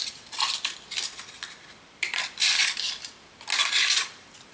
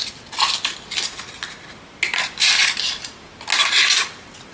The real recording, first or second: second